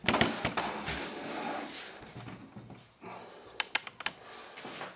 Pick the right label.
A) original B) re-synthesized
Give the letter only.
A